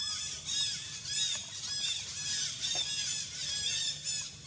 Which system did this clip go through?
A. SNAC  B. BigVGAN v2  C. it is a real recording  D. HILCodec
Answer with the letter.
C